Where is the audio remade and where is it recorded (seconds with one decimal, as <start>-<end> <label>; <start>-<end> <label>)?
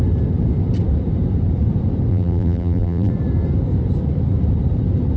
0.0-2.1 recorded; 2.1-3.1 remade; 3.1-5.2 recorded